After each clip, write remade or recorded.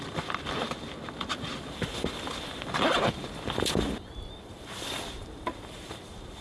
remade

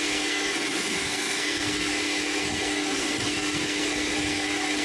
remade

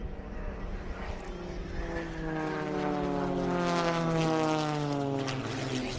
recorded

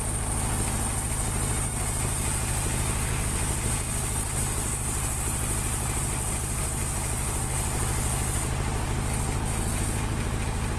recorded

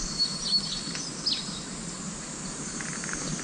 recorded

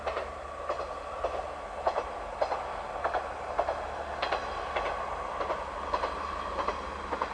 recorded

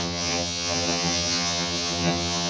remade